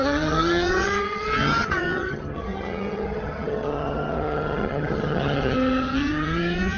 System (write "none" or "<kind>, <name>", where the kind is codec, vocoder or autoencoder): vocoder, HiFi-GAN